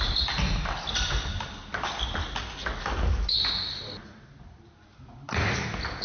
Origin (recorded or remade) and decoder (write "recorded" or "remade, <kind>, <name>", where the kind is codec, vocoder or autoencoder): recorded